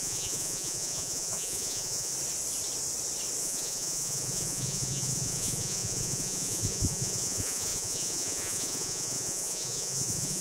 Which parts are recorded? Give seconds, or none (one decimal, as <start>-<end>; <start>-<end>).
2.1-3.4